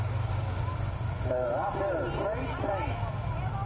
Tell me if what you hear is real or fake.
real